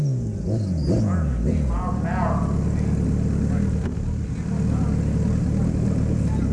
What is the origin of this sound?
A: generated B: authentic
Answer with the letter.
B